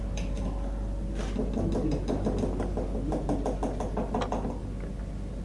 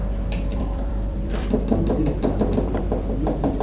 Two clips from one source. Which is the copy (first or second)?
second